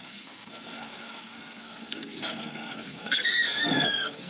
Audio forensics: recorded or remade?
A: remade